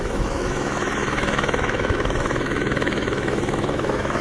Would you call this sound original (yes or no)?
no